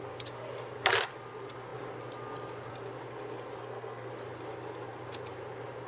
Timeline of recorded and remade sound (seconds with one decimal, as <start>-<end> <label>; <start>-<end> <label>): 0.0-3.6 recorded; 3.6-4.1 remade; 4.1-5.9 recorded